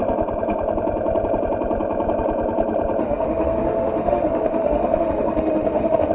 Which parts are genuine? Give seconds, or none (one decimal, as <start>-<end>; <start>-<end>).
0.0-3.0